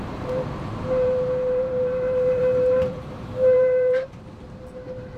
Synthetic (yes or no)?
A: yes